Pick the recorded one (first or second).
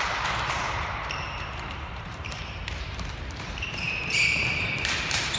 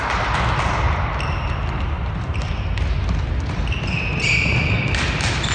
second